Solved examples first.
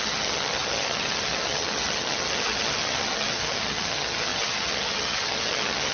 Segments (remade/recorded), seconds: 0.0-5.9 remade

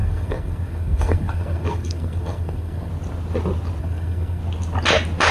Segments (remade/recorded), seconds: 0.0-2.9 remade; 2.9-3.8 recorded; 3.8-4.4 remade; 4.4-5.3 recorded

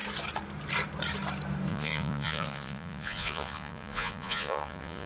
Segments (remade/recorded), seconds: 0.0-1.7 recorded; 1.7-5.1 remade

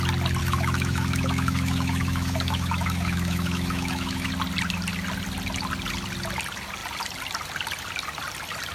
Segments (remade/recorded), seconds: 0.0-0.4 recorded; 0.4-4.3 remade; 4.3-8.7 recorded

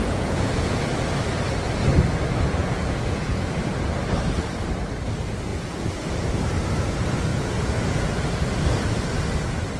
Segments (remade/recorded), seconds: 0.0-0.8 remade; 0.8-2.6 recorded; 2.6-3.5 remade; 3.5-5.5 recorded; 5.5-6.1 remade; 6.1-7.3 recorded; 7.3-8.1 remade; 8.1-9.8 recorded